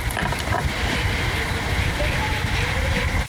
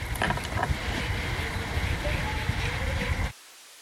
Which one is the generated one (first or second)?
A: first